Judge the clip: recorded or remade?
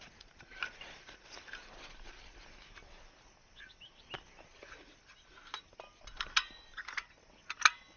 recorded